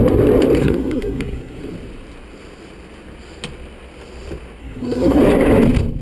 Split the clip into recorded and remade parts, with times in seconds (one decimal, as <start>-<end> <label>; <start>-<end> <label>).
0.0-0.6 recorded; 0.6-1.6 remade; 1.6-4.6 recorded; 4.6-5.2 remade; 5.2-6.0 recorded